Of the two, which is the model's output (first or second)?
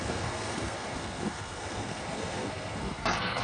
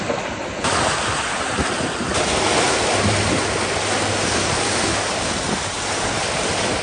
first